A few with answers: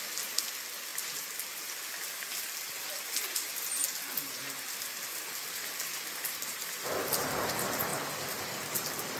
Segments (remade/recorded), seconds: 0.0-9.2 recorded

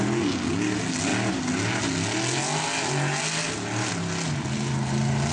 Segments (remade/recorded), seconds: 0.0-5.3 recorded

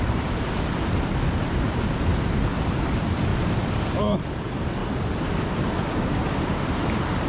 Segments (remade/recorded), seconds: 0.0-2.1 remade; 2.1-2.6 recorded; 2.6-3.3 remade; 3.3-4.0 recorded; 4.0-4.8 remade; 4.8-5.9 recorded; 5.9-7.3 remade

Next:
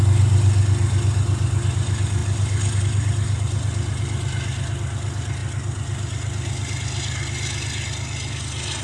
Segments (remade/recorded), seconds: 0.0-8.8 recorded